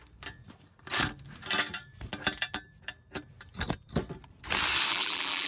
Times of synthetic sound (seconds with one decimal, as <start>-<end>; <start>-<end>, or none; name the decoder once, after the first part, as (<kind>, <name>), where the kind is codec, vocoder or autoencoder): 4.9-5.5 (vocoder, BigVGAN v2)